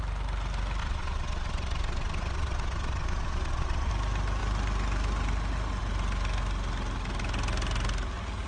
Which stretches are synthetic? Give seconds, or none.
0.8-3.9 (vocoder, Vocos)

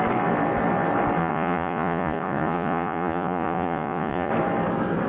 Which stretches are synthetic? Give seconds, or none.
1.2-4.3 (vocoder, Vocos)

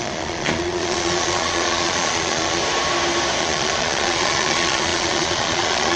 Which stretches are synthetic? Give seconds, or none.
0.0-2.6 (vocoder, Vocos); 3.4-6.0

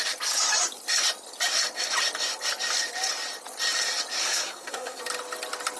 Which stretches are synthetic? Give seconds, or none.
4.2-5.0 (codec, SNAC)

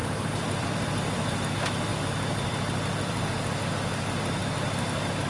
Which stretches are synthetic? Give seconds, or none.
0.0-1.3 (vocoder, BigVGAN v2); 1.9-3.2